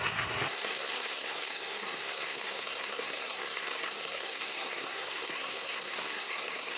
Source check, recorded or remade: remade